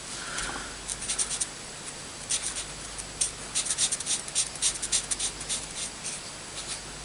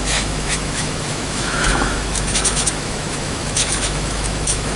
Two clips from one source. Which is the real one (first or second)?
first